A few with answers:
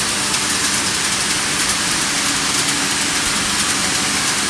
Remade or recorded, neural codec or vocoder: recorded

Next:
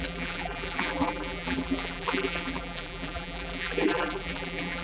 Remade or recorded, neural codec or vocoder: remade, vocoder, BigVGAN v2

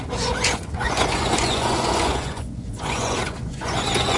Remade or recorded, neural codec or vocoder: remade, vocoder, Vocos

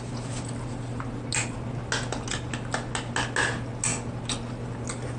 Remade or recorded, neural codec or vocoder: recorded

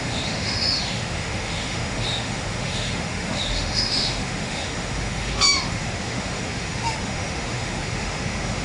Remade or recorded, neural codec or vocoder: remade, autoencoder, DAC-VAE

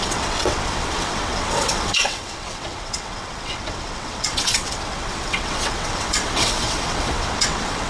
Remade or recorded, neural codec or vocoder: remade, vocoder, WaveNeXt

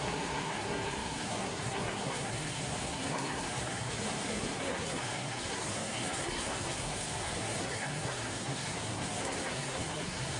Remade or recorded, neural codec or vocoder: remade, codec, SNAC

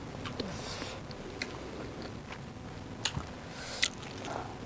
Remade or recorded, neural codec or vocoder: recorded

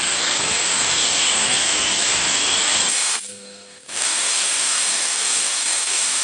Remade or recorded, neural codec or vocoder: remade, codec, DAC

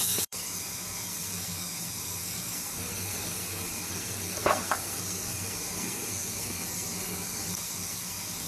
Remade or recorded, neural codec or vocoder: remade, codec, SNAC